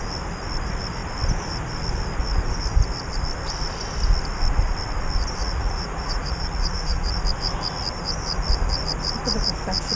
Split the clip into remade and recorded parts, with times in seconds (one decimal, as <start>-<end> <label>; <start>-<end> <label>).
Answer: 0.0-5.4 recorded; 5.4-7.2 remade; 7.2-10.0 recorded